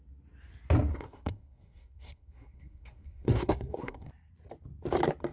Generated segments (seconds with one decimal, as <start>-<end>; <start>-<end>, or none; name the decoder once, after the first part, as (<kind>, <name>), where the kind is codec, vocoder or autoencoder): 0.9-4.1 (codec, SNAC)